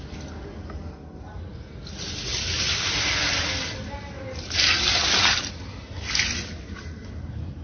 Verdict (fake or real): real